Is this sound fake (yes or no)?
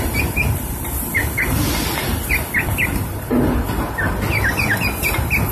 no